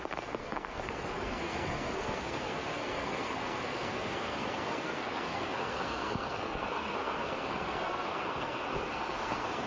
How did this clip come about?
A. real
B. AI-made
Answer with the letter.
B